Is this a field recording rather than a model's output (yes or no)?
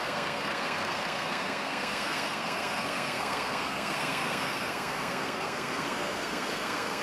no